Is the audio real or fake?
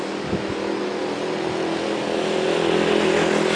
real